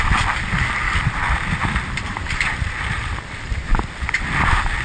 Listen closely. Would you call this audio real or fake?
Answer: real